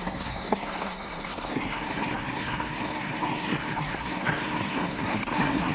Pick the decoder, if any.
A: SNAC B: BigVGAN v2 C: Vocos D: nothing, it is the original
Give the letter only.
A